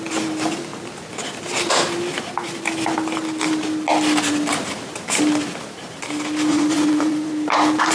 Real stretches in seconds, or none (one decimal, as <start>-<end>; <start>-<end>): 0.0-6.5; 7.3-7.9